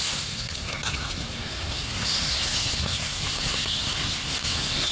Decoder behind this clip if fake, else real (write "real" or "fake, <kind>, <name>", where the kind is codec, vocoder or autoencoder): fake, codec, SNAC